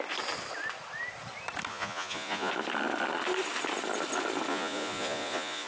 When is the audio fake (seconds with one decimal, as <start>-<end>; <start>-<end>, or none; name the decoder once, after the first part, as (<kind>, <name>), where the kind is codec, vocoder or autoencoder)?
1.7-2.5 (vocoder, Vocos); 4.5-5.7